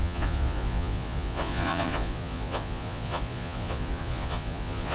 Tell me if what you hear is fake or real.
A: fake